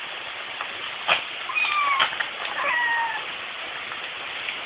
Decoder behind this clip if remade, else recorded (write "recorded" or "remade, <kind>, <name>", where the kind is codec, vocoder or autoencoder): recorded